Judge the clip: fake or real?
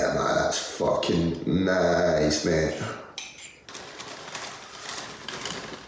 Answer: real